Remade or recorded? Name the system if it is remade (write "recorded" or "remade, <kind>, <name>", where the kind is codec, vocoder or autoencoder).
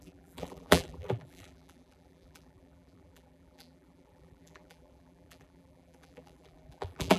remade, vocoder, BigVGAN v2